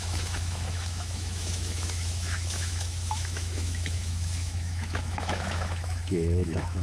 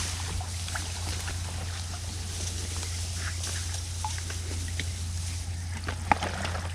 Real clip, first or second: second